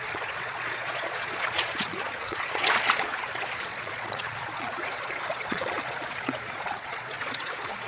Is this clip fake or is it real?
fake